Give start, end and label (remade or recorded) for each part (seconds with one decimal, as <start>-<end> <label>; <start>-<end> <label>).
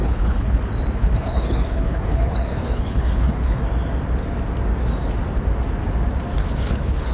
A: 0.0-0.6 remade; 0.6-1.0 recorded; 1.0-3.6 remade; 3.6-6.4 recorded; 6.4-7.1 remade